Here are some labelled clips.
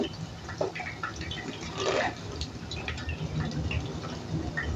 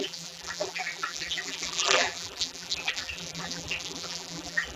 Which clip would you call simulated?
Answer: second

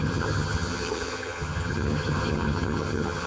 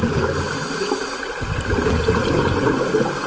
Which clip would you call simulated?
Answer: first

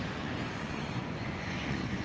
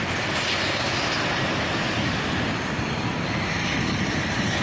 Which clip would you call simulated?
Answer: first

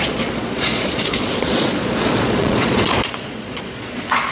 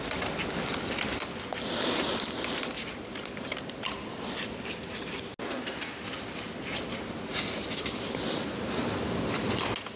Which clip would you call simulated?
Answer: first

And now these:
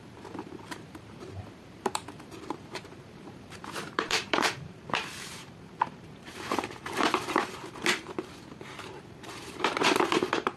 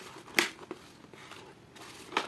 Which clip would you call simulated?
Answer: first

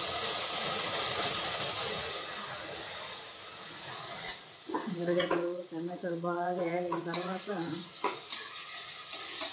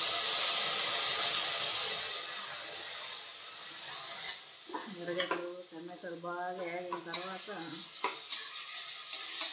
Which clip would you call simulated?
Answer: first